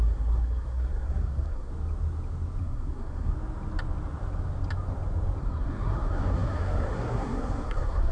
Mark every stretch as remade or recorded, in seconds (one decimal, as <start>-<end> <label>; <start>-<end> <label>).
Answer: 0.0-1.7 remade; 1.7-2.6 recorded; 2.6-3.3 remade; 3.3-5.4 recorded; 5.4-8.1 remade